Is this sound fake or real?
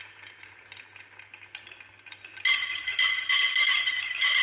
real